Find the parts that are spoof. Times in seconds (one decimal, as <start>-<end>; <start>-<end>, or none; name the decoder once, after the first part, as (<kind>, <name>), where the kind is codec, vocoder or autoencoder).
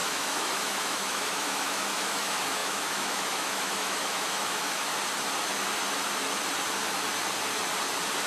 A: 0.0-4.9 (autoencoder, DAC-VAE)